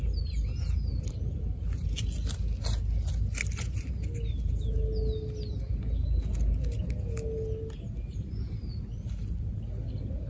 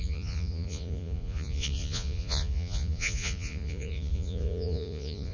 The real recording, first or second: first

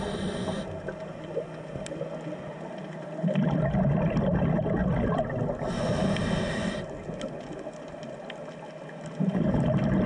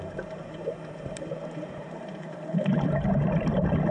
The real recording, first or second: first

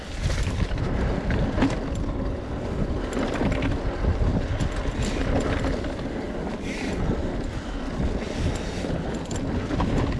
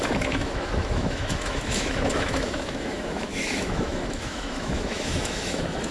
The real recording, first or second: first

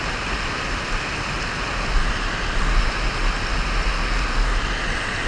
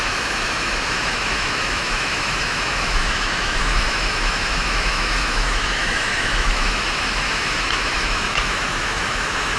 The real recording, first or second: first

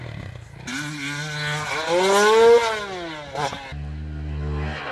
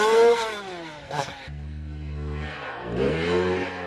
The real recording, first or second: first